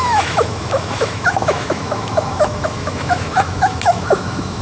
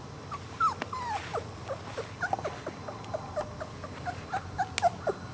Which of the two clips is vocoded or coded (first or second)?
first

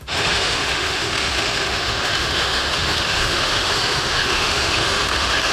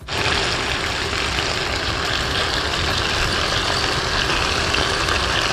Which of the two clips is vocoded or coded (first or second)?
first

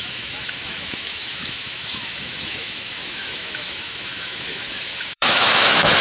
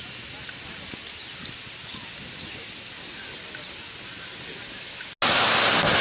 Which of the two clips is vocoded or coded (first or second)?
first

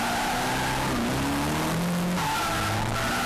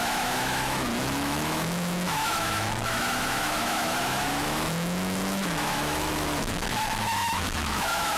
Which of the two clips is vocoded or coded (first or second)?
second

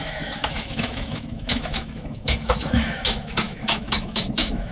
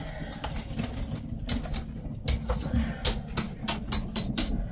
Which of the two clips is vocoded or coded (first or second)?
first